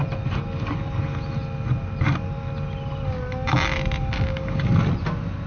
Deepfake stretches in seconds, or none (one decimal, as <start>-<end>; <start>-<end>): 4.0-4.7